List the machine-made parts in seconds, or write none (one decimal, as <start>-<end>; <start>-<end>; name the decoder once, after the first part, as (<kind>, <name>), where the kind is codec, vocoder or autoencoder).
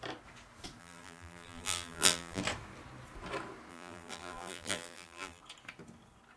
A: 0.8-2.4 (vocoder, BigVGAN v2); 3.7-5.4